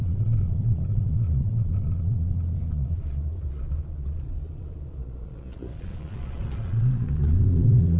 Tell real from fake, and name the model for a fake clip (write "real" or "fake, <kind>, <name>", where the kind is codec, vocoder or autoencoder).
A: fake, vocoder, Vocos